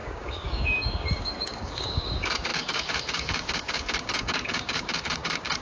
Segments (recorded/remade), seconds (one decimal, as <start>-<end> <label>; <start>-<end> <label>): 0.0-5.6 remade